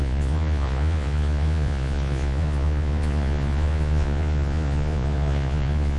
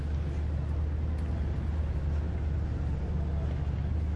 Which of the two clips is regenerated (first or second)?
first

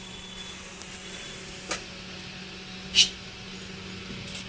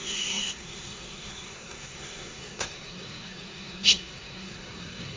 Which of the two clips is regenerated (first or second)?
second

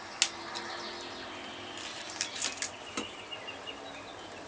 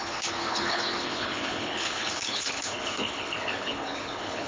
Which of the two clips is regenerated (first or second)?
second